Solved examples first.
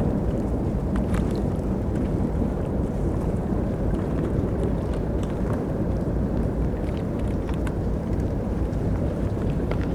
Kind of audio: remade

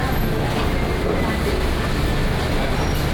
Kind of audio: recorded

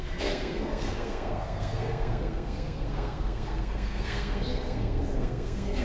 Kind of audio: remade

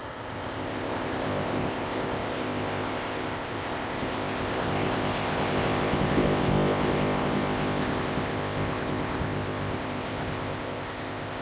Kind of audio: remade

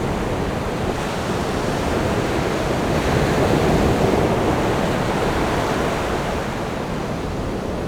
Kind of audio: recorded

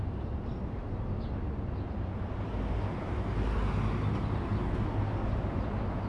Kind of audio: recorded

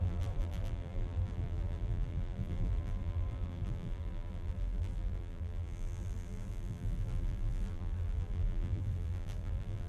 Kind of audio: remade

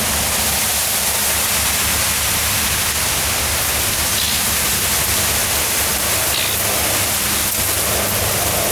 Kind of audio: recorded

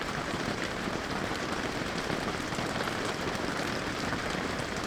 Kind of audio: remade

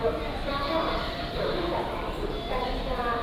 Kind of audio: remade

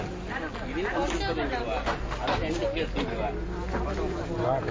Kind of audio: recorded